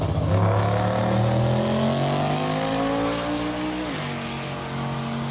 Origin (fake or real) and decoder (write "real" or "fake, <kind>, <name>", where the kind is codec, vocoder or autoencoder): real